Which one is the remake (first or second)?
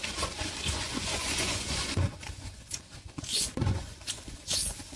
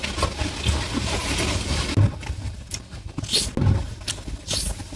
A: first